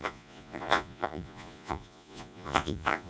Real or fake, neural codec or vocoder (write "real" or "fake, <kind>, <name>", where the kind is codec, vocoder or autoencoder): fake, vocoder, Vocos